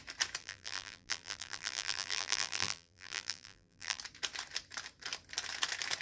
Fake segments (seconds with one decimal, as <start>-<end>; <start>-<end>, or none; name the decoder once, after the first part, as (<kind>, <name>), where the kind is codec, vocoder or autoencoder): 0.4-4.0 (vocoder, BigVGAN v2)